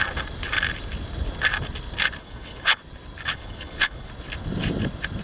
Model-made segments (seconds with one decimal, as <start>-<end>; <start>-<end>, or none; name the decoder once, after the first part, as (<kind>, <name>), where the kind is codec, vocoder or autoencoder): 2.2-2.8 (codec, HILCodec); 3.3-4.1